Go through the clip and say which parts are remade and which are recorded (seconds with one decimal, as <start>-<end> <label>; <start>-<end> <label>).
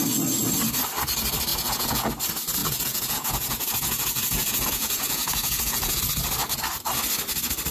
0.0-1.5 recorded; 1.5-2.1 remade; 2.1-2.6 recorded; 2.6-6.0 remade; 6.0-7.7 recorded